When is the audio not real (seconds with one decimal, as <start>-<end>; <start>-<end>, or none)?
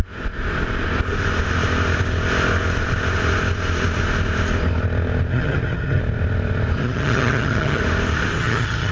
5.3-6.0; 6.8-7.8; 8.4-8.9